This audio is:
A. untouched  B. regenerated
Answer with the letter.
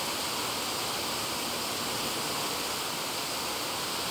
A